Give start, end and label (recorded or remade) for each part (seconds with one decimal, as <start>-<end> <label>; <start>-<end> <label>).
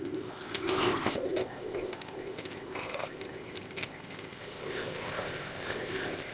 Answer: 0.0-6.3 remade